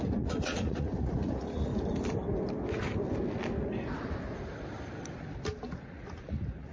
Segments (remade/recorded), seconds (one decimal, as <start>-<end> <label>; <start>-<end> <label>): 0.0-1.7 remade; 1.7-5.7 recorded; 5.7-6.7 remade